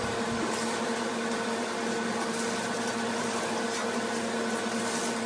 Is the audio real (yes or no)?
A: yes